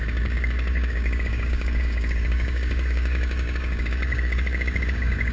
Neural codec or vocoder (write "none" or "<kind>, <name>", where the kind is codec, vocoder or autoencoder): codec, DAC